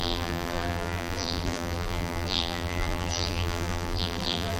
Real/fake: fake